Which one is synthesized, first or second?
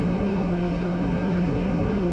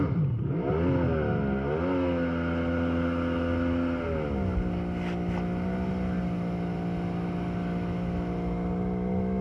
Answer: first